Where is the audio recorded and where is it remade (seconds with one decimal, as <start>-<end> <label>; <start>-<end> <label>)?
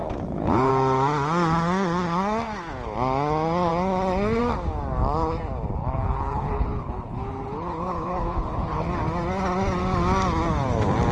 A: 0.0-0.7 remade; 0.7-5.8 recorded; 5.8-8.9 remade; 8.9-11.1 recorded